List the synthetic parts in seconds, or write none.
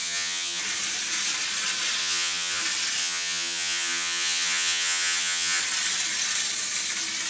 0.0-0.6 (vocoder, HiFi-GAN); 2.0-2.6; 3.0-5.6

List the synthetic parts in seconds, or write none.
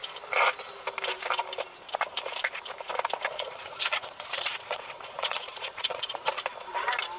3.3-6.3 (vocoder, Vocos)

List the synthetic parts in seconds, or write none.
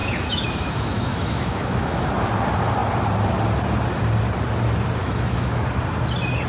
0.0-2.1 (autoencoder, DAC-VAE); 5.0-5.6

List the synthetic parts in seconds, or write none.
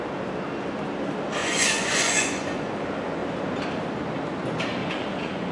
1.4-2.7 (vocoder, Vocos); 4.8-5.5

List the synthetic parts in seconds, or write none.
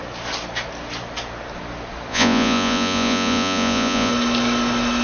2.1-4.1 (vocoder, Vocos)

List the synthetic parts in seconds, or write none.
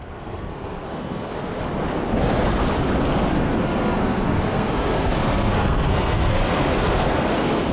0.0-1.3 (codec, SNAC); 3.3-7.7